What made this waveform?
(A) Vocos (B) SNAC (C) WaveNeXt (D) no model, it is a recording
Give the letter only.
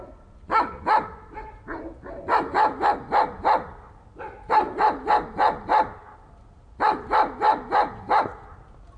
D